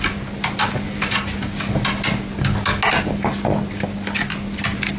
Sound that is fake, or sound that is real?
real